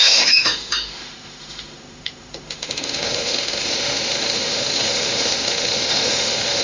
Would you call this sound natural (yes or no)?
no